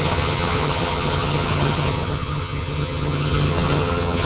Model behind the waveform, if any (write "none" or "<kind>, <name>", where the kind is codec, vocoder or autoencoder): vocoder, HiFi-GAN